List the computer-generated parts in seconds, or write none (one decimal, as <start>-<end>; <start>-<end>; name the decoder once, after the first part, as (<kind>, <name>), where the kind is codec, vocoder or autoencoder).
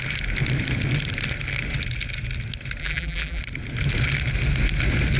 2.8-3.4 (vocoder, BigVGAN v2)